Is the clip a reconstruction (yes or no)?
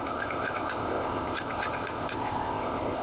yes